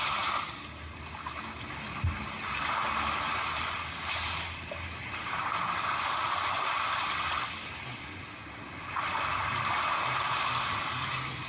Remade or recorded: recorded